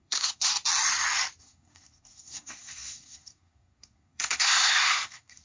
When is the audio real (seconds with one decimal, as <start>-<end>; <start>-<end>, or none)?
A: 0.5-1.4